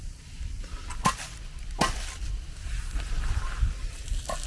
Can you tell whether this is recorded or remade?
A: recorded